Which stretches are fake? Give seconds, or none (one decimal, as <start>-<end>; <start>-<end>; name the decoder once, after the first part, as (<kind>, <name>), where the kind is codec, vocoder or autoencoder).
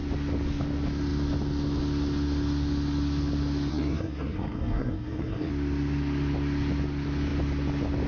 3.7-5.5 (codec, SNAC)